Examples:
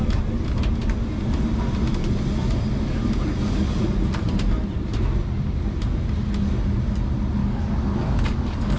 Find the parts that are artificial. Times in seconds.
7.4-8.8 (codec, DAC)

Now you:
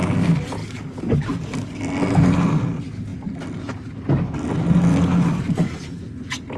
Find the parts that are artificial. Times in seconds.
0.6-1.8 (codec, DAC); 4.9-5.4

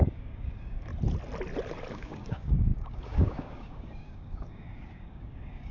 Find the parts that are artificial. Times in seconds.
0.0-0.9 (codec, DAC); 1.9-5.7